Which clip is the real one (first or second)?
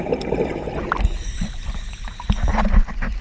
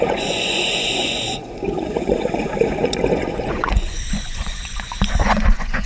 first